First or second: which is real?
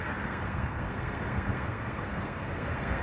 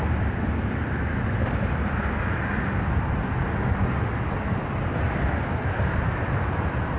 second